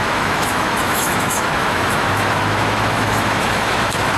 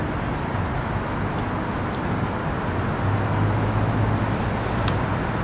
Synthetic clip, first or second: first